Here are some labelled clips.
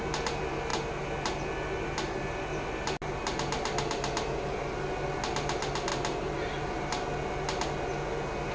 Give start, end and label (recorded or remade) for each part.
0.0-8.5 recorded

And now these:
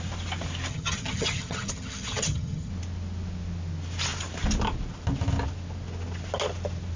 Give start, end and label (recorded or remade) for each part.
0.0-0.7 recorded; 0.7-2.7 remade; 2.7-7.0 recorded

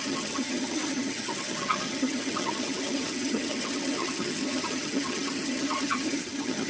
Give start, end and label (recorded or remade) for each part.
0.0-6.7 remade

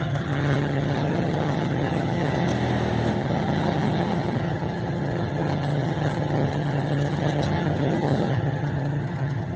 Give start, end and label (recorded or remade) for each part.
0.0-2.5 remade; 2.5-3.2 recorded; 3.2-9.6 remade

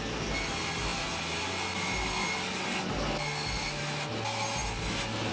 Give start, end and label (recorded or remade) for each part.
0.0-5.3 recorded